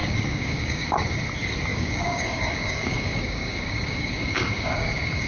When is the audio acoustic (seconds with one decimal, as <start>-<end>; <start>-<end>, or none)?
1.2-1.7